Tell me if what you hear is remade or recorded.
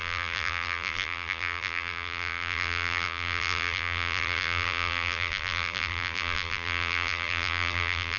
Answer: remade